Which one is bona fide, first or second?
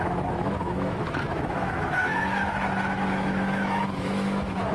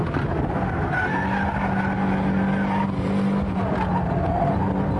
second